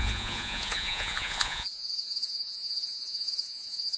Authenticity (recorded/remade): remade